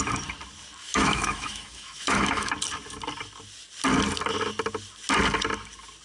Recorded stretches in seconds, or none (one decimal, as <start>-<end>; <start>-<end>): 0.0-0.8; 2.5-6.0